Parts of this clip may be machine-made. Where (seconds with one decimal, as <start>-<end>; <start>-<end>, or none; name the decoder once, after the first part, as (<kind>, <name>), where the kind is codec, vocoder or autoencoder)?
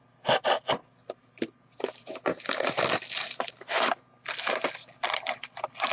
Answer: none